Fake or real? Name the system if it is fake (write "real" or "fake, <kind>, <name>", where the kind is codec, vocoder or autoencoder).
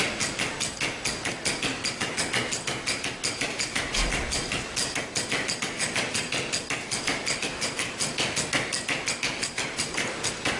real